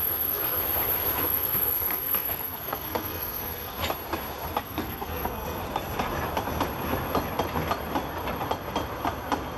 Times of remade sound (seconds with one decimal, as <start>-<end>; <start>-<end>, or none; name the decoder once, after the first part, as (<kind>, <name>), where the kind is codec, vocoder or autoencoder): 0.0-0.6 (codec, SNAC); 1.2-3.8; 4.6-5.6

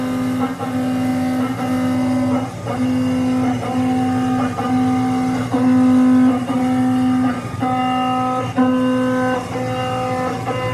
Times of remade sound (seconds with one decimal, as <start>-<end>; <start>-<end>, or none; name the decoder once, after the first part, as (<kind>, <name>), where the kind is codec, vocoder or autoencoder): none

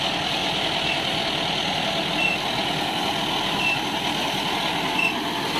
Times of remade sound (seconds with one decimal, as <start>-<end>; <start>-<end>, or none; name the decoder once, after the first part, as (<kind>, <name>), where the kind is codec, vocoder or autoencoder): none